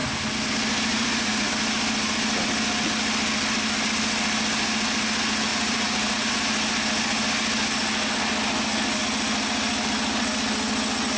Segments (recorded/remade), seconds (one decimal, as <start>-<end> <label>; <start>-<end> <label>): 0.0-0.9 recorded; 0.9-1.5 remade; 1.5-5.5 recorded; 5.5-6.3 remade; 6.3-11.2 recorded